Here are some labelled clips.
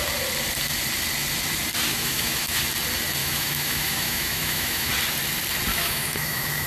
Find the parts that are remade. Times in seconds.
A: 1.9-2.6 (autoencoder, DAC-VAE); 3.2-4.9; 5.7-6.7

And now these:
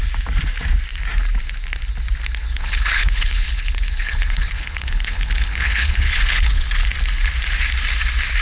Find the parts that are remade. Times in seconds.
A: 2.4-6.7 (codec, HILCodec)

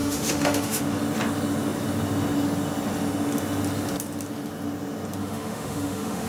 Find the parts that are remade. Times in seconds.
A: 0.0-0.8 (autoencoder, DAC-VAE); 5.2-6.3

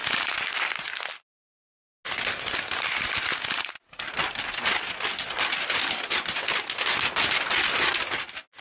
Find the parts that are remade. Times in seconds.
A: none

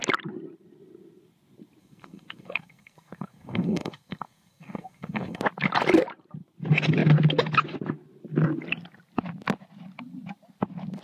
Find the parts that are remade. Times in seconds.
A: 1.8-5.4 (codec, SNAC)

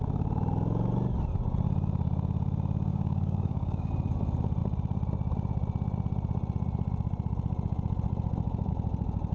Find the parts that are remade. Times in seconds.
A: 2.9-3.9 (codec, DAC)

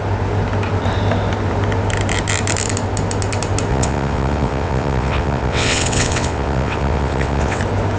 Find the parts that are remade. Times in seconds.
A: 3.7-7.6 (vocoder, WaveNeXt)